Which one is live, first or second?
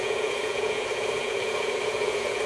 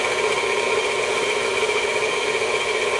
second